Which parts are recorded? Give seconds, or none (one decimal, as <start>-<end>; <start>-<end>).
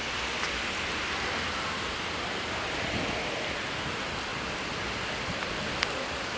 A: 0.0-4.3; 5.5-6.4